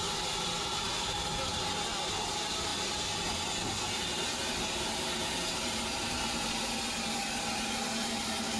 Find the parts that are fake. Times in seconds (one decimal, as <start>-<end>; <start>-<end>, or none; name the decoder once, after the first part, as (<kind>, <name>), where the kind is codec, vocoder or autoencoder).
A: none